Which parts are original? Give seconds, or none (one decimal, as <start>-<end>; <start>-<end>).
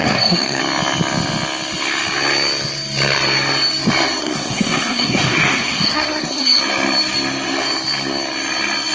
0.6-4.2; 6.6-8.9